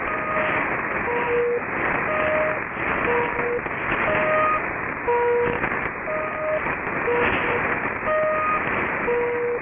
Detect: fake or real real